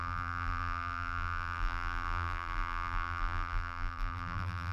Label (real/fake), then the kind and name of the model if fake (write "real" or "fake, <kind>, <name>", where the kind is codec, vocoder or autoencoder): fake, vocoder, BigVGAN v2